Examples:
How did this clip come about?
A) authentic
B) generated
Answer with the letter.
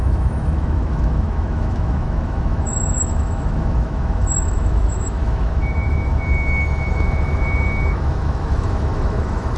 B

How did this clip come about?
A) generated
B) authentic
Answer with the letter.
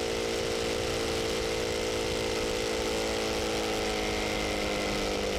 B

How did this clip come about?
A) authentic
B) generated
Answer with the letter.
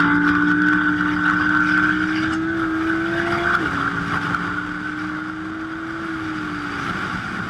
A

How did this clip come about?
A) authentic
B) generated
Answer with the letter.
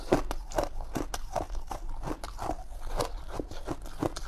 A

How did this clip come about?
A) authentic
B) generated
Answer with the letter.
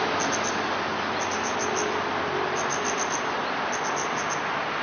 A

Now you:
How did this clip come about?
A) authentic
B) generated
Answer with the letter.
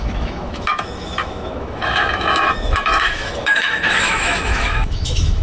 B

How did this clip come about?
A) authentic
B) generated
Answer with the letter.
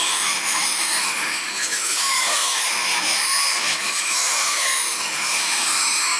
B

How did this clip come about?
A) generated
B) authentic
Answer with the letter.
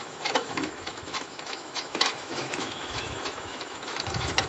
A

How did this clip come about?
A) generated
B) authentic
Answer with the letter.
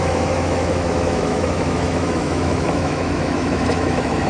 A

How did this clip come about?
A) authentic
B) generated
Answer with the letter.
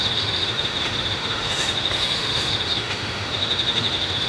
B